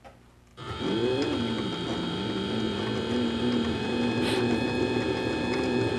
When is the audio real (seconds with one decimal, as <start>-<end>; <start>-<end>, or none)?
0.0-6.0